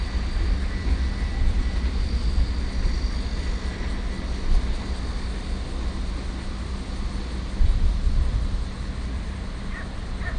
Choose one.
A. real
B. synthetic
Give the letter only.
A